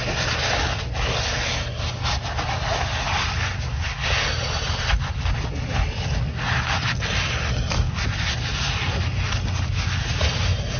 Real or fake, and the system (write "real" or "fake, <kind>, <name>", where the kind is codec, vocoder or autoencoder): real